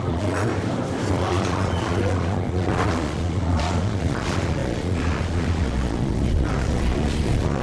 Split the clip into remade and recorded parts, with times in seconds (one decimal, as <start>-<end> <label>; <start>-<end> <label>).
0.0-0.5 remade; 0.5-1.1 recorded; 1.1-7.6 remade